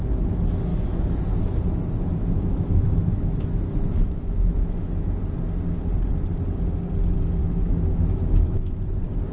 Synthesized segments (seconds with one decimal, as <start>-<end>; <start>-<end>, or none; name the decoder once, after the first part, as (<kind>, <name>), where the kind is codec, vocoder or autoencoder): 0.7-5.2 (autoencoder, DAC-VAE); 7.4-8.8